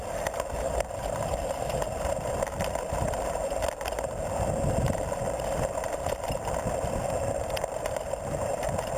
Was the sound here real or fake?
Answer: real